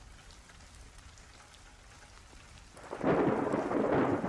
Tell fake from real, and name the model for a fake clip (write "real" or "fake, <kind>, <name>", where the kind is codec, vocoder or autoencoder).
real